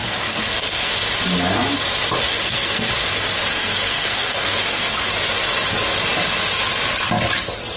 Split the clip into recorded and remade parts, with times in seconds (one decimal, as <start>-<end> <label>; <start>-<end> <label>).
0.0-0.9 remade; 0.9-2.3 recorded; 2.3-2.9 remade; 2.9-3.5 recorded; 3.5-5.1 remade; 5.1-7.8 recorded